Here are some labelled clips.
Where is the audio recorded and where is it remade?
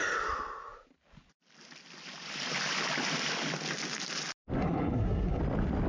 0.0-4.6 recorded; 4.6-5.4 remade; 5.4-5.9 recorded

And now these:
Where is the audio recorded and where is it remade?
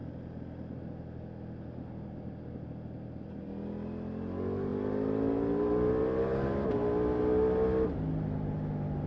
0.0-9.1 recorded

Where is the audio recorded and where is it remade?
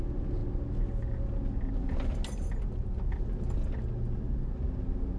0.0-5.2 recorded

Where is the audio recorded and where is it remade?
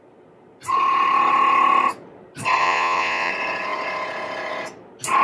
0.0-2.6 recorded; 2.6-3.3 remade; 3.3-5.2 recorded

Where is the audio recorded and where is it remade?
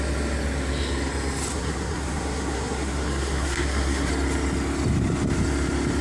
0.0-1.5 recorded; 1.5-4.1 remade; 4.1-6.0 recorded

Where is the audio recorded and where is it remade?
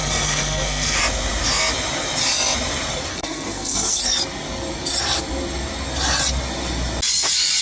0.0-1.0 remade; 1.0-3.1 recorded; 3.1-4.0 remade; 4.0-7.6 recorded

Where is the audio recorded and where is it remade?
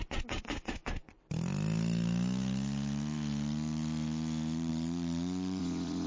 0.0-5.6 recorded; 5.6-6.1 remade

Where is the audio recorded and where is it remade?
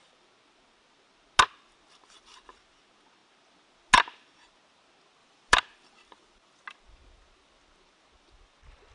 0.0-5.2 recorded; 5.2-6.5 remade; 6.5-8.9 recorded